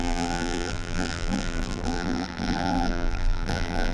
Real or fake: fake